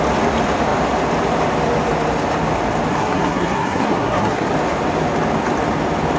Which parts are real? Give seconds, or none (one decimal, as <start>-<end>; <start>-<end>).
0.0-2.9; 4.5-6.2